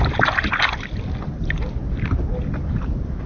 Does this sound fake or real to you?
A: real